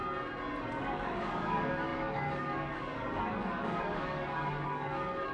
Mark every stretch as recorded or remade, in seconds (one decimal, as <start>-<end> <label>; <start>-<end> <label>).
0.0-0.8 recorded; 0.8-5.3 remade